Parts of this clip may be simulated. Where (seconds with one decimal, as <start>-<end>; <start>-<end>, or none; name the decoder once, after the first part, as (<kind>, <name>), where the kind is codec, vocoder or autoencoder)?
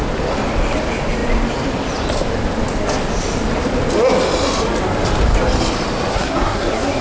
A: 6.1-7.0 (codec, SNAC)